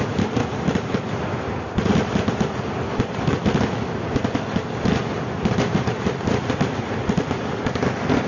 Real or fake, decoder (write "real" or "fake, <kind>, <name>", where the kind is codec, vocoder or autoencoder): real